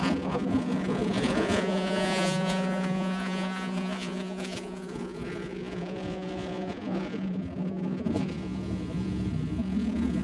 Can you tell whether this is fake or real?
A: fake